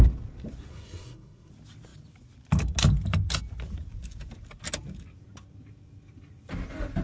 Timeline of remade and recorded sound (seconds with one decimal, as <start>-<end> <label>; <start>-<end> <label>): 0.0-0.7 recorded; 0.7-1.5 remade; 1.5-7.0 recorded